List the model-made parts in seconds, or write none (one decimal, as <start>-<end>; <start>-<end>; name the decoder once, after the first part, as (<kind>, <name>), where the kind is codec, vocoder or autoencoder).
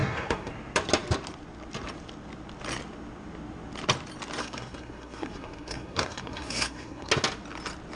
0.0-0.5 (codec, SNAC); 4.4-7.1